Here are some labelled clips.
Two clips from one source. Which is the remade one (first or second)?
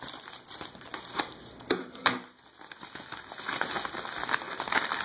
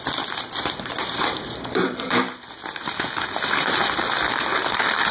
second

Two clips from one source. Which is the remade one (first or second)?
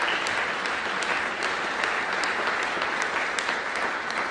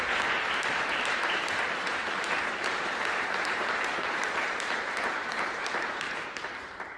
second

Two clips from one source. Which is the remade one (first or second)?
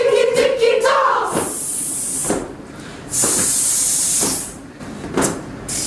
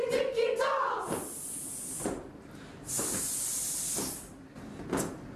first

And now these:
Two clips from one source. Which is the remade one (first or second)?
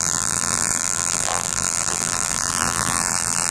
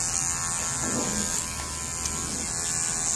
first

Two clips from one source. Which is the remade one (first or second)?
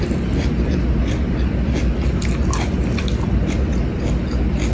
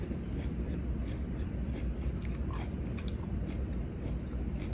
second